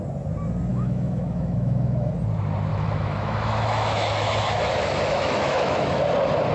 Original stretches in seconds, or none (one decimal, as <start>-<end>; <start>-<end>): 0.0-0.7; 2.1-2.7; 6.0-6.5